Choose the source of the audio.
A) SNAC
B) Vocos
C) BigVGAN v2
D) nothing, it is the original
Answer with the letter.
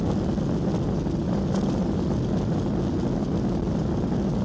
D